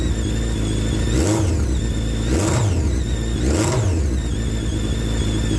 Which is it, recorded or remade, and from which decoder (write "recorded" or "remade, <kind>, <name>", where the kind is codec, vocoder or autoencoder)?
recorded